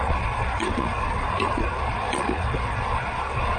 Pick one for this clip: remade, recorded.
remade